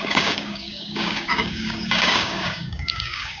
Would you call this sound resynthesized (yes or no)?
yes